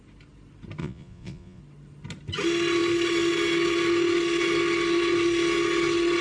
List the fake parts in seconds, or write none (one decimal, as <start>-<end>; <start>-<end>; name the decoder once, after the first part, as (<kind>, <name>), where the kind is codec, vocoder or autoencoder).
0.8-1.6 (vocoder, Vocos)